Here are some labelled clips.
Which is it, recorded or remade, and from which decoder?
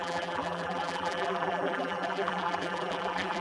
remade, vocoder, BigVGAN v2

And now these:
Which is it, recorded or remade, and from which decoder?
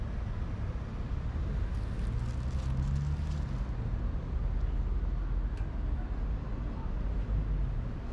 recorded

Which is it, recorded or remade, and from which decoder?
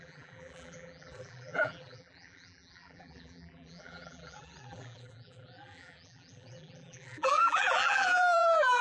remade, vocoder, BigVGAN v2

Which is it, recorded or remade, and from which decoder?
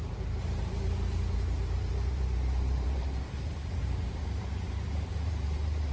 remade, vocoder, BigVGAN v2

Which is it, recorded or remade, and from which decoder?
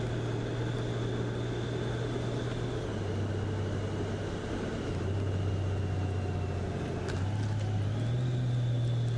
recorded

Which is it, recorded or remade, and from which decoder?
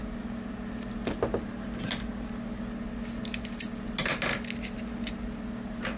recorded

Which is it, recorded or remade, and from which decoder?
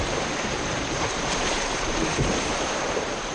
remade, vocoder, BigVGAN v2